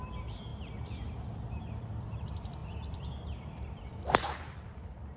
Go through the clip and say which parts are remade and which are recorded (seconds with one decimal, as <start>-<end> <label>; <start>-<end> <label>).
0.0-0.5 remade; 0.5-1.5 recorded; 1.5-5.2 remade